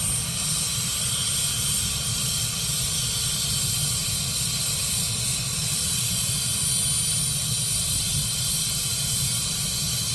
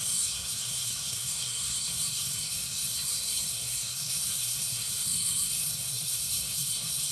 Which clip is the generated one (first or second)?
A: second